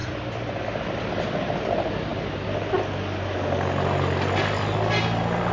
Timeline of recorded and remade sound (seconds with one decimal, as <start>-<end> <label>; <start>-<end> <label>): 0.0-0.6 remade; 0.6-5.5 recorded